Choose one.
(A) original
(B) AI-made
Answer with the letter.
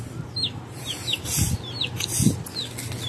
A